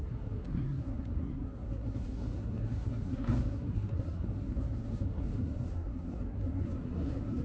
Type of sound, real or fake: fake